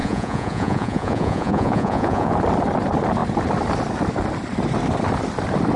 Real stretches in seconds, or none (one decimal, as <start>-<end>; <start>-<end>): 2.3-5.8